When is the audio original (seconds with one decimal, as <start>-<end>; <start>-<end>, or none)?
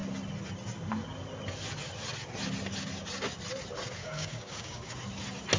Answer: 0.0-4.0; 4.9-5.6